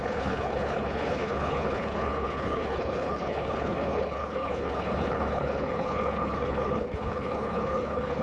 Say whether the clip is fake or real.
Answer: fake